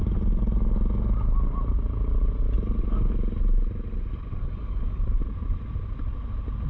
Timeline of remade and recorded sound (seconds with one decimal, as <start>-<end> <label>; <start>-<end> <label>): 0.0-4.4 recorded; 4.4-5.0 remade; 5.0-6.7 recorded